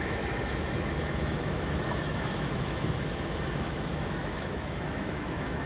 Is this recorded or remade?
remade